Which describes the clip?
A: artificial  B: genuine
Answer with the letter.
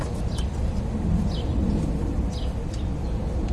B